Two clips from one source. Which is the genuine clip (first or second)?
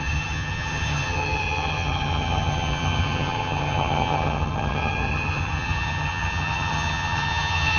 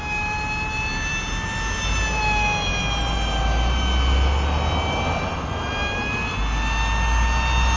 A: second